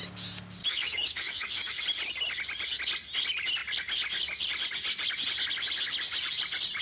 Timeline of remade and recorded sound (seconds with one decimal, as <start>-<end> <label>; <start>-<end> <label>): 0.0-0.6 recorded; 0.6-1.8 remade; 1.8-6.8 recorded